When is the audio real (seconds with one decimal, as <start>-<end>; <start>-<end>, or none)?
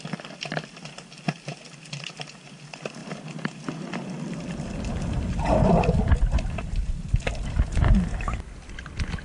0.0-9.2